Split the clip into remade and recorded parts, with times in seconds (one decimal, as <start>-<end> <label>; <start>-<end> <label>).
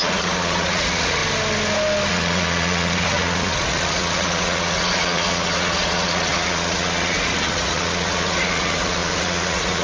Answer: 0.0-1.2 remade; 1.2-2.1 recorded; 2.1-9.8 remade